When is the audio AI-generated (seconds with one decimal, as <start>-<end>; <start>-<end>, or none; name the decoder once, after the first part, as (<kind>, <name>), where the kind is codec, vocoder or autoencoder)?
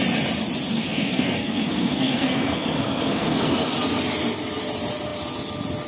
0.7-3.7 (codec, SNAC)